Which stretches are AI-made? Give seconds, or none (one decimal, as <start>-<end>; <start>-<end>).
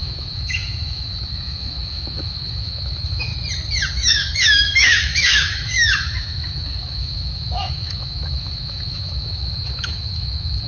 0.0-3.3; 3.9-10.7